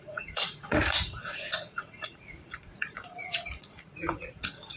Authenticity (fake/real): fake